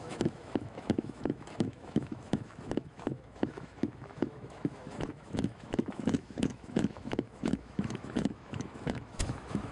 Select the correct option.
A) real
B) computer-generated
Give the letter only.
B